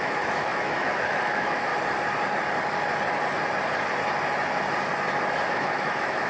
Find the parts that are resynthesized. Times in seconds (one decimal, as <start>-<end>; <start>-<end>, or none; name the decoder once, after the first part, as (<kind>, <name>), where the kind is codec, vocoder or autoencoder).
0.0-1.7 (autoencoder, DAC-VAE); 5.5-6.3